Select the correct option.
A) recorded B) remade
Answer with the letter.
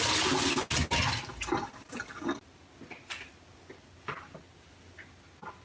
A